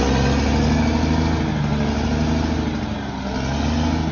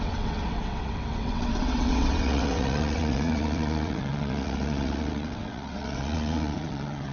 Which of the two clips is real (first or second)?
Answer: first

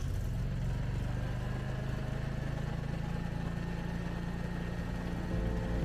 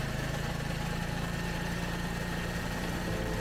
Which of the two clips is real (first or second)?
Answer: first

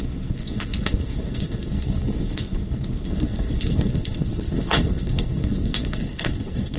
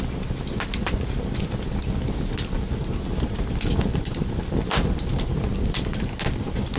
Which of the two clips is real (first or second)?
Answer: second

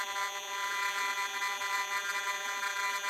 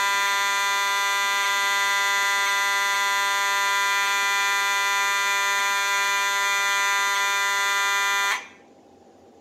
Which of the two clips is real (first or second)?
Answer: second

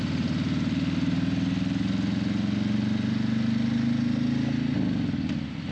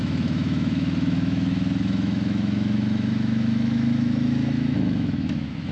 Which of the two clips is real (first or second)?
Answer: first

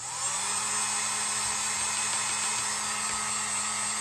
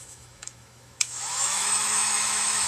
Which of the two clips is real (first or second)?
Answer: first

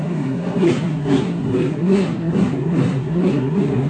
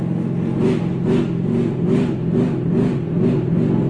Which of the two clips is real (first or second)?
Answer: second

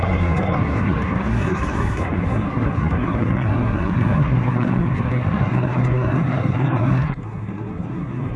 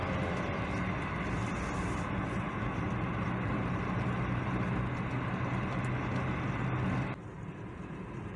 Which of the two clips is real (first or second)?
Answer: second